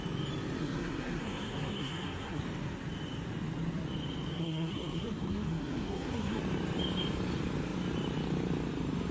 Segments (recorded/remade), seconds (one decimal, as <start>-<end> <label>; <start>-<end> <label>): 0.0-0.6 recorded; 0.6-2.4 remade; 2.4-4.3 recorded; 4.3-6.4 remade; 6.4-9.1 recorded